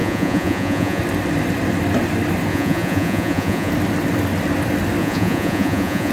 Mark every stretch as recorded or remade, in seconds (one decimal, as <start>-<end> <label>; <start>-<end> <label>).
0.0-1.0 remade; 1.0-2.5 recorded; 2.5-3.7 remade; 3.7-5.0 recorded; 5.0-6.1 remade